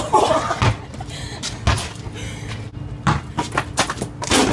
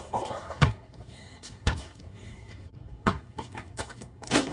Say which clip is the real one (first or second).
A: first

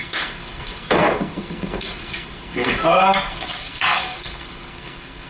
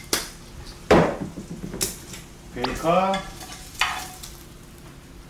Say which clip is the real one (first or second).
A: second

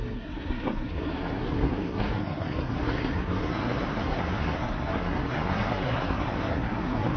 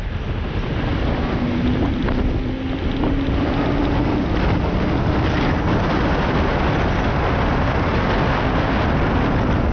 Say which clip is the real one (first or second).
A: second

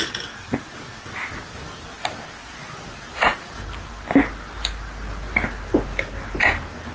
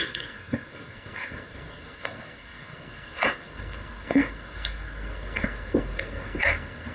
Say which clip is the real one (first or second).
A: first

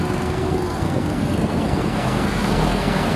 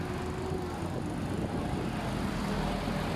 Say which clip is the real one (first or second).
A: second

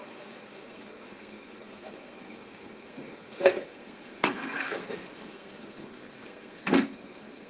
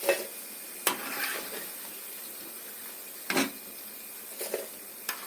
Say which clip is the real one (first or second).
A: second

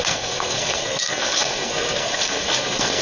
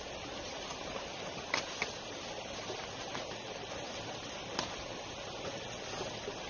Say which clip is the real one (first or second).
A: second